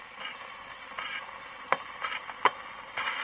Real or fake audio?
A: real